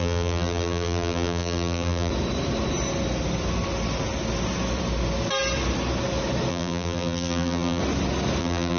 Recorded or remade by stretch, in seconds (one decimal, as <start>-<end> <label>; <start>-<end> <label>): 0.0-2.1 remade; 2.1-6.5 recorded; 6.5-7.8 remade; 7.8-8.4 recorded; 8.4-8.8 remade